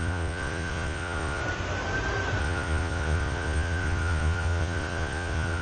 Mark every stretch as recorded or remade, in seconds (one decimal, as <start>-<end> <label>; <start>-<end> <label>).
0.0-1.4 remade; 1.4-2.4 recorded; 2.4-5.6 remade